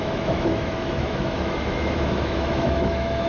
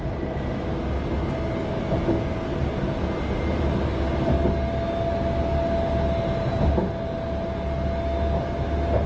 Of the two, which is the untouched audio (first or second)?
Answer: second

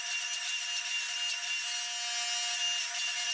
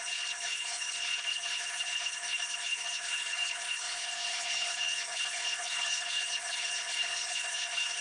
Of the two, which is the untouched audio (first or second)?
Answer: first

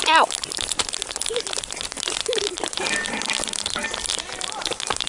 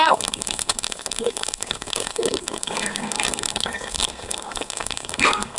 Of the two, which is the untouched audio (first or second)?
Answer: first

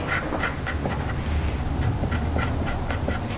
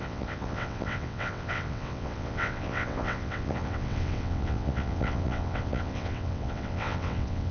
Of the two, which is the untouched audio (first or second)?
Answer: first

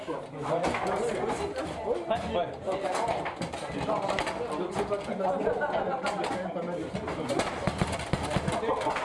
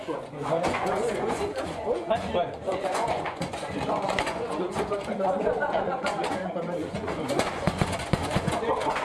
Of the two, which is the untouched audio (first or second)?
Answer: first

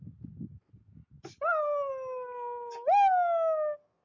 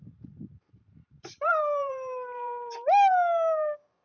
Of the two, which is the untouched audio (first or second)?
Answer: first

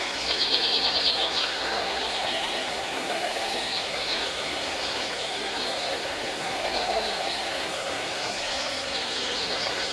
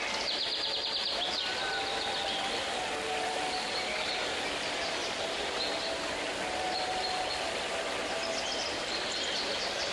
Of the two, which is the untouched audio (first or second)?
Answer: second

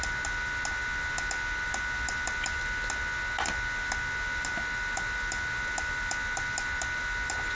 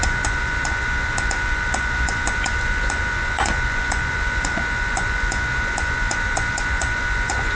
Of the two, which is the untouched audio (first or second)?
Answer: first